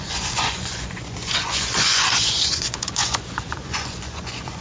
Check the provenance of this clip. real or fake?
fake